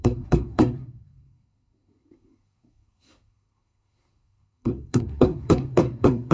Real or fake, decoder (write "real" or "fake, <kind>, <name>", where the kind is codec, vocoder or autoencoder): fake, codec, SNAC